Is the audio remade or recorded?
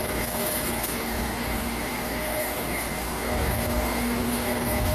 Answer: remade